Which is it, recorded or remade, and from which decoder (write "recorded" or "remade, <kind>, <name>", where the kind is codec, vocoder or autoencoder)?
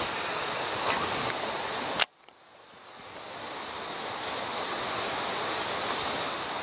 recorded